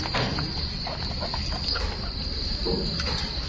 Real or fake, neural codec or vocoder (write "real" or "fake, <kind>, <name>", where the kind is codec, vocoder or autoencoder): real